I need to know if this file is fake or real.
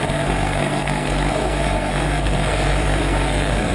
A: fake